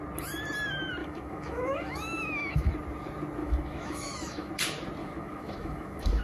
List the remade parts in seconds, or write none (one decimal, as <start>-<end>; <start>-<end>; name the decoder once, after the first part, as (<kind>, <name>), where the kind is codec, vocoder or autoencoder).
1.0-2.7 (autoencoder, DAC-VAE); 3.4-4.5; 5.0-6.2